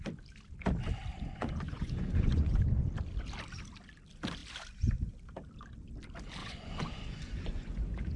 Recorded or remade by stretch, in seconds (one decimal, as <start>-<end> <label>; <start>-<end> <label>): 0.0-1.1 recorded; 1.1-2.8 remade; 2.8-6.4 recorded; 6.4-8.2 remade